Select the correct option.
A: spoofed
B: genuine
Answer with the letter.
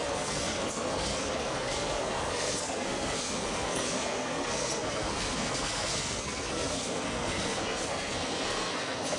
A